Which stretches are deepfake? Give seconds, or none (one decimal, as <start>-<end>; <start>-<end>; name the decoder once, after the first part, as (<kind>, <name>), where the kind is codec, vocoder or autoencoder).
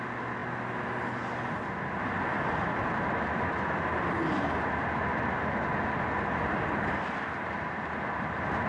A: none